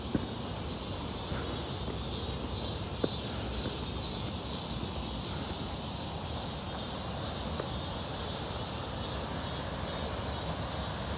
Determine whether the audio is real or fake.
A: real